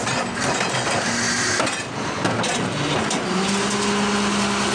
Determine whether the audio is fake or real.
real